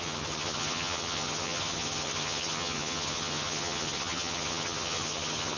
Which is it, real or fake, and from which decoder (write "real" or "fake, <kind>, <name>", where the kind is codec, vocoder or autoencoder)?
fake, vocoder, HiFi-GAN